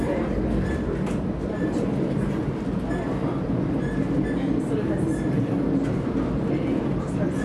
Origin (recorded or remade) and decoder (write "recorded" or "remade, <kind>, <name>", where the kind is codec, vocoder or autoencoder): recorded